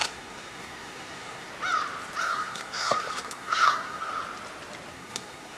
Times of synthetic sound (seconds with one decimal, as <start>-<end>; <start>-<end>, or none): 0.0-1.5; 2.2-4.1; 4.9-5.6